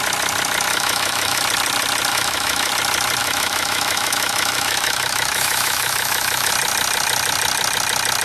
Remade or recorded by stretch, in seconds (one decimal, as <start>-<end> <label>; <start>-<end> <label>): 0.0-0.7 recorded; 0.7-1.4 remade; 1.4-2.1 recorded; 2.1-2.7 remade; 2.7-3.2 recorded; 3.2-6.5 remade; 6.5-8.2 recorded